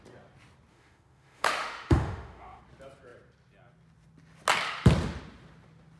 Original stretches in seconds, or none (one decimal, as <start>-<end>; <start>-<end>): 0.0-0.7; 2.6-6.0